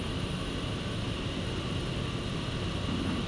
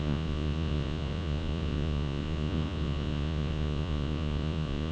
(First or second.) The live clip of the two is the first